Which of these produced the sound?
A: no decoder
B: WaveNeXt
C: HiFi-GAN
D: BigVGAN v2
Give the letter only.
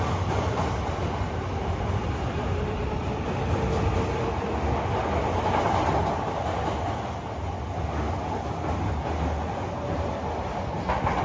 A